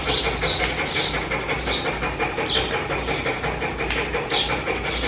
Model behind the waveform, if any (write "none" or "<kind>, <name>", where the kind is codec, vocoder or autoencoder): none